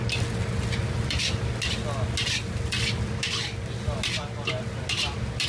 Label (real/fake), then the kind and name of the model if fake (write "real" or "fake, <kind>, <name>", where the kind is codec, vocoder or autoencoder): real